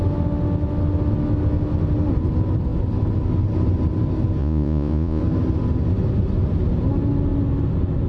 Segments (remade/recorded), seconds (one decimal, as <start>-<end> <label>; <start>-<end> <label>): 0.0-4.4 recorded; 4.4-5.2 remade; 5.2-8.1 recorded